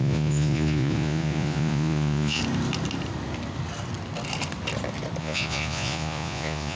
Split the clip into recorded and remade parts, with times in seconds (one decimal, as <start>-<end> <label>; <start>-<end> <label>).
0.0-2.4 remade; 2.4-5.2 recorded; 5.2-6.8 remade